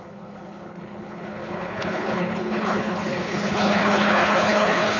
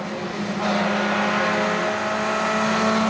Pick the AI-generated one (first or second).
first